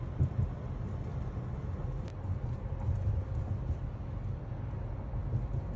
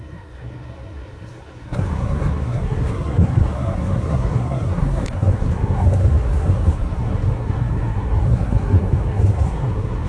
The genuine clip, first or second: first